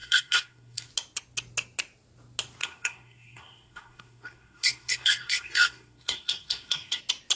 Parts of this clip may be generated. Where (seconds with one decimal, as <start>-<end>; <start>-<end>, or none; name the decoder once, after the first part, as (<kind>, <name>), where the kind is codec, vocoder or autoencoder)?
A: 0.0-0.9 (codec, SNAC); 2.6-7.0